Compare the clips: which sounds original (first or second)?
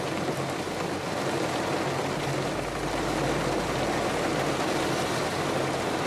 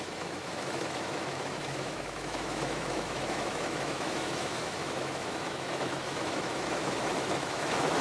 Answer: first